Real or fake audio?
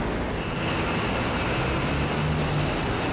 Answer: real